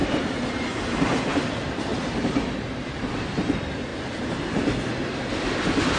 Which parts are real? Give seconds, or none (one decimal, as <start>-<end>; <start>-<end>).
0.0-1.3; 1.9-2.9; 3.9-5.1